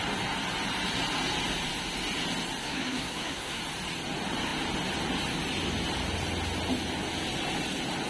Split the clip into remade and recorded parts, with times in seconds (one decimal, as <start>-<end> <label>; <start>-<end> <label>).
0.0-2.6 recorded; 2.6-3.6 remade; 3.6-8.1 recorded